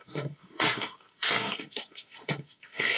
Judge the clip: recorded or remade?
remade